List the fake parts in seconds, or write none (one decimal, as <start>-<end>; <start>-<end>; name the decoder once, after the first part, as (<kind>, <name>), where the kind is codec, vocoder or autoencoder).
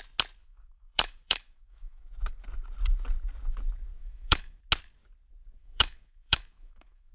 0.4-2.1 (autoencoder, DAC-VAE); 4.0-4.6; 5.6-7.1